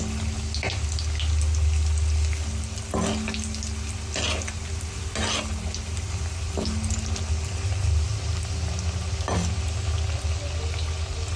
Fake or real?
real